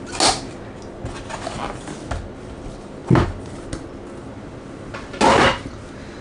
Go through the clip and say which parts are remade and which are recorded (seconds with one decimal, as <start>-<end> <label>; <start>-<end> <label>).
0.0-6.2 recorded